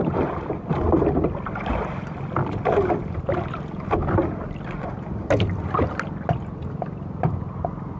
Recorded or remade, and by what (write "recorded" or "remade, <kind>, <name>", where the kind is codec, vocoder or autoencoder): recorded